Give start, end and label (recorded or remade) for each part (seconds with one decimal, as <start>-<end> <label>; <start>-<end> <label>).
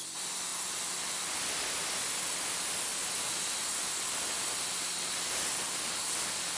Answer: 0.0-6.6 recorded